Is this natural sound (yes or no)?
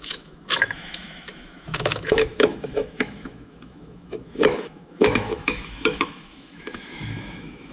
no